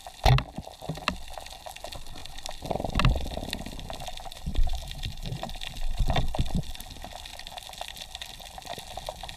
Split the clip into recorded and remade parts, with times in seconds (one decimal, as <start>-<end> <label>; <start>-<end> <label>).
0.0-4.5 recorded; 4.5-5.5 remade; 5.5-9.4 recorded